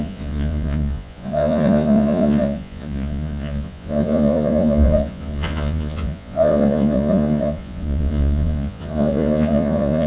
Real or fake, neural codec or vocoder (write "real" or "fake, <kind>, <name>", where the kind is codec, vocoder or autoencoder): fake, vocoder, Vocos